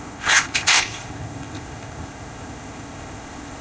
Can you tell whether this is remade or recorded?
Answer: remade